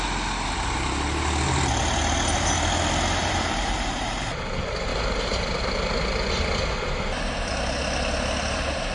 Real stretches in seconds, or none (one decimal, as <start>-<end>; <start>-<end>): 0.0-3.2; 4.2-4.9; 5.6-8.9